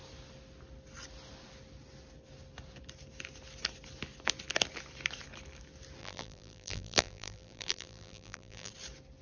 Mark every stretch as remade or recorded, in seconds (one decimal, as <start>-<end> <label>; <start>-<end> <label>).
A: 0.0-6.0 recorded; 6.0-8.7 remade; 8.7-9.2 recorded